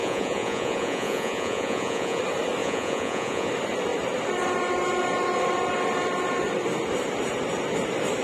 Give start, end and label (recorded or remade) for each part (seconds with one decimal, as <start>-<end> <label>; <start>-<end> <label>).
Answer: 0.0-2.2 remade; 2.2-2.6 recorded; 2.6-3.5 remade; 3.5-8.2 recorded